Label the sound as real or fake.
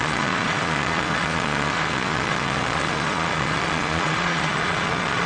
fake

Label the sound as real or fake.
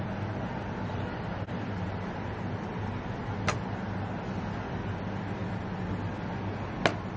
real